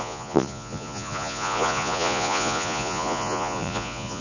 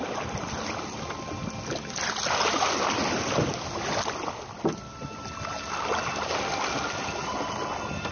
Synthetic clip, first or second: first